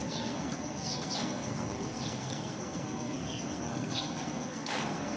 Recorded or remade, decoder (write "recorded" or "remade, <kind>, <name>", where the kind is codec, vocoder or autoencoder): remade, codec, SNAC